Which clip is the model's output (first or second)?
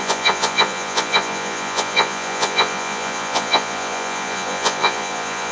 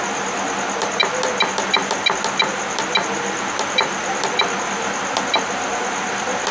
first